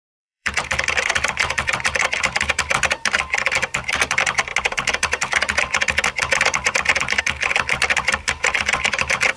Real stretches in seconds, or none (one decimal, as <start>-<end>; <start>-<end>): 4.5-7.2